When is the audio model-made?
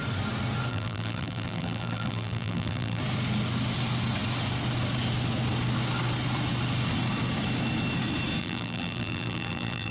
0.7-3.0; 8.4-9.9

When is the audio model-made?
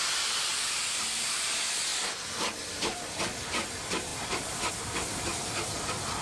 0.0-1.9; 2.7-6.2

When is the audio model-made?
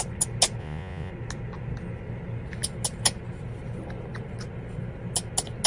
0.6-1.1